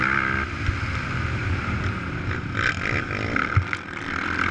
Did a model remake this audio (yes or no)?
no